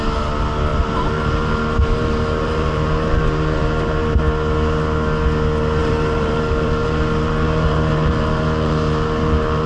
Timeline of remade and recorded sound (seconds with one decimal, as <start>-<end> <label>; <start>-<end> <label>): 0.0-0.7 recorded; 0.7-4.2 remade; 4.2-5.8 recorded; 5.8-9.7 remade